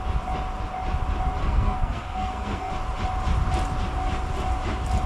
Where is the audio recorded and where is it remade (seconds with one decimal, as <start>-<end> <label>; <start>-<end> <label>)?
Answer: 0.0-1.4 recorded; 1.4-2.7 remade; 2.7-5.1 recorded